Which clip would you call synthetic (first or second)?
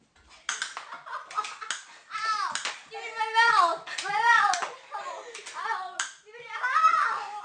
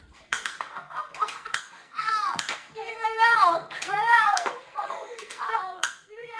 second